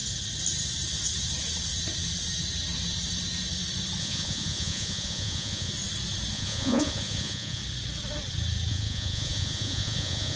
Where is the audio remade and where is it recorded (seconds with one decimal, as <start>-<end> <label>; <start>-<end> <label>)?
0.0-4.0 recorded; 4.0-5.7 remade; 5.7-6.3 recorded; 6.3-7.6 remade; 7.6-8.7 recorded; 8.7-10.4 remade